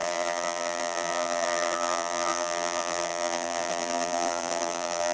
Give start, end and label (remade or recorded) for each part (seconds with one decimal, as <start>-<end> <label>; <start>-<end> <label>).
0.0-5.1 remade

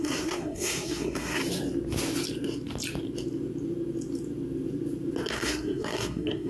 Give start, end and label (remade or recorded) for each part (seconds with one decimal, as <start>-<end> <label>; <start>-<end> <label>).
0.0-1.4 remade; 1.4-5.3 recorded; 5.3-6.5 remade

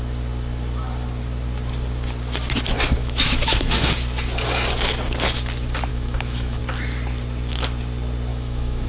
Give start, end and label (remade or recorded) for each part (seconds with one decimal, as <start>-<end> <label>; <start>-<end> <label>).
0.0-3.0 recorded; 3.0-3.9 remade; 3.9-5.9 recorded; 5.9-6.6 remade; 6.6-8.3 recorded; 8.3-8.9 remade

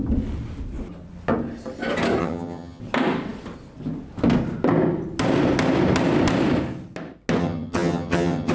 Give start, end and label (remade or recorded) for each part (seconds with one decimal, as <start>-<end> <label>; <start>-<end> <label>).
0.0-2.2 recorded; 2.2-2.8 remade; 2.8-7.4 recorded; 7.4-8.5 remade

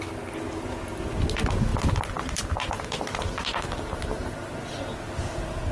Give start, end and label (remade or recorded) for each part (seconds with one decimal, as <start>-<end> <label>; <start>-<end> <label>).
0.0-5.7 recorded

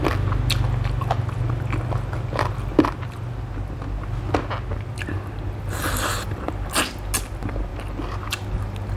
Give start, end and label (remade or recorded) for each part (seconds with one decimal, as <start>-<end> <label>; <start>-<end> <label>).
0.0-9.0 recorded

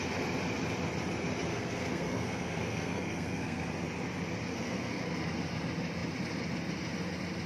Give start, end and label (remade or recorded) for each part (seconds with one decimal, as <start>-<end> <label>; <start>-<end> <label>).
0.0-1.5 recorded; 1.5-3.7 remade; 3.7-4.5 recorded; 4.5-5.0 remade; 5.0-7.5 recorded